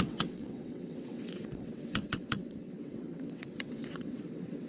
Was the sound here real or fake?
fake